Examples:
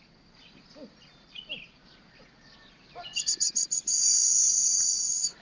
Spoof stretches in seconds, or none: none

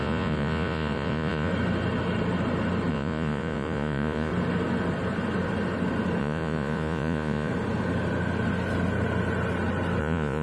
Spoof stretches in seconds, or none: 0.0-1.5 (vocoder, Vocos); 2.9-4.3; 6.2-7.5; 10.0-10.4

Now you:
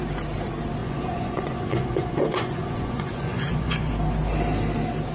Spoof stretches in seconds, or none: 0.8-3.9 (vocoder, Vocos)